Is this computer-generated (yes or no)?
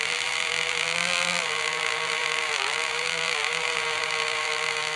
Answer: yes